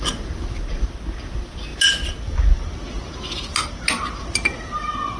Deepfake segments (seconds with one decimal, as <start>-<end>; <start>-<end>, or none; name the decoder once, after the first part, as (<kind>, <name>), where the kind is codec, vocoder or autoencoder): none